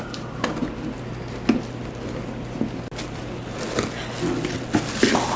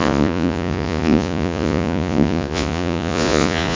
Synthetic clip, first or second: second